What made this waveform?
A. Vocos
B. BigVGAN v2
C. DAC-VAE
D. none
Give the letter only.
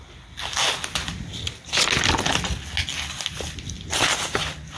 D